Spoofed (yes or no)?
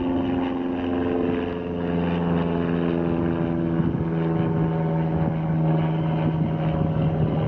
no